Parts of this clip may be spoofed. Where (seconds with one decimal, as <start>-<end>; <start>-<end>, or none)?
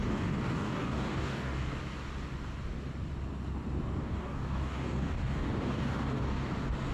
0.0-1.7; 4.0-6.5